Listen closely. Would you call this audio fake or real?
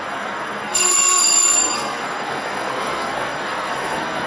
fake